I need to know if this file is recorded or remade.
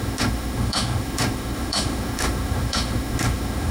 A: remade